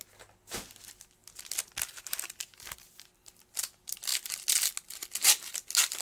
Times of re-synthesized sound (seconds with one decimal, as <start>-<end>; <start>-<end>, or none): none